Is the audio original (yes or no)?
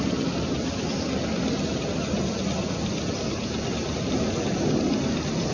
yes